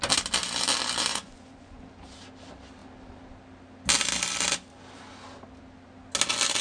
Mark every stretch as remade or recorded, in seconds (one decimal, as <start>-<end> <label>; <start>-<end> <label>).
0.0-1.1 recorded; 1.1-1.8 remade; 1.8-6.6 recorded